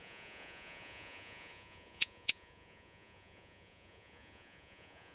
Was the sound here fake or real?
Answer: fake